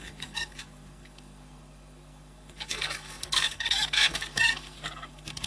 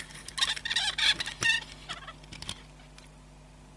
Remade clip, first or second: first